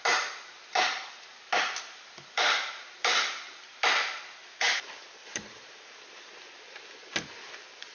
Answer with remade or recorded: remade